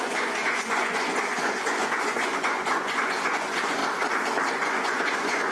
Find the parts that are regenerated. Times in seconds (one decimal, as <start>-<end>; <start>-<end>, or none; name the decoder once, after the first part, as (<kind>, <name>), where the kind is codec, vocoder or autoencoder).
0.0-3.8 (vocoder, Vocos); 4.5-5.5